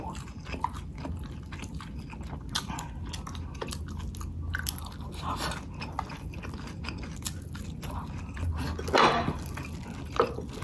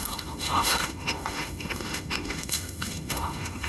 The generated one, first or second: second